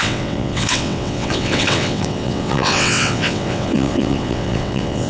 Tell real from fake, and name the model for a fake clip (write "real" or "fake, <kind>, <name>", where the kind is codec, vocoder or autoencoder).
fake, vocoder, WaveNeXt